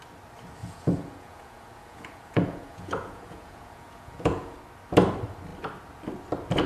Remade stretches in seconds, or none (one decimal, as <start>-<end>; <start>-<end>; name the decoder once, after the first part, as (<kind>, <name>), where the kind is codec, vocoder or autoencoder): 0.6-4.6 (vocoder, Vocos)